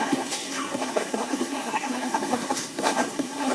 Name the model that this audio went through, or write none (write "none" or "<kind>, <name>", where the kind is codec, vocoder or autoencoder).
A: codec, SNAC